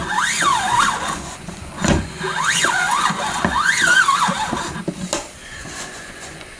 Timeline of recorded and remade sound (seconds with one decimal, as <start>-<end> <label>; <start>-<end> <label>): 0.0-4.0 remade; 4.0-5.4 recorded; 5.4-6.6 remade